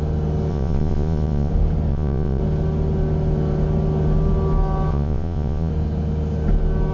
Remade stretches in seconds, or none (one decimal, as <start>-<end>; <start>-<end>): 0.5-1.5; 1.9-2.4; 4.9-5.7